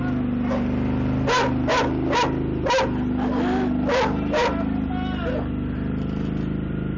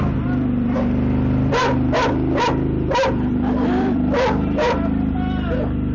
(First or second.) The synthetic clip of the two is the second